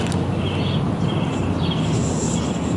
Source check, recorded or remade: recorded